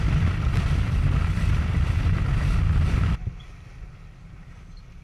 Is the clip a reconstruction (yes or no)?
no